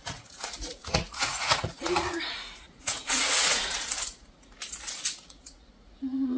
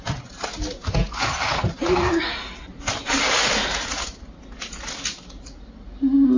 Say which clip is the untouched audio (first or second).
second